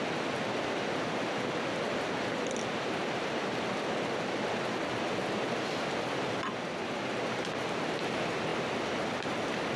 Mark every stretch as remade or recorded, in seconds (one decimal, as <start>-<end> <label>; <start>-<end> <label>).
0.0-9.8 recorded